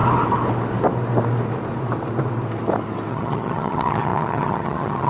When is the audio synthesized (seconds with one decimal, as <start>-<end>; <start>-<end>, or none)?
3.1-5.1

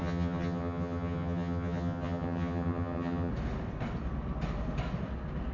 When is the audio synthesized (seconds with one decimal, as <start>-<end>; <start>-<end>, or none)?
0.0-3.3

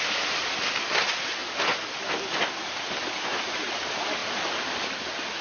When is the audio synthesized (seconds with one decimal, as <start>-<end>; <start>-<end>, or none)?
none

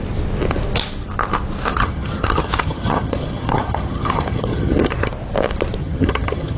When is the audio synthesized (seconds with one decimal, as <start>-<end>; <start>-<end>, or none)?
1.7-5.1; 5.8-6.6

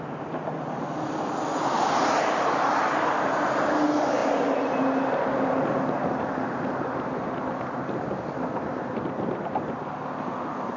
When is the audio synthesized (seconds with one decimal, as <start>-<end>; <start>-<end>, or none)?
none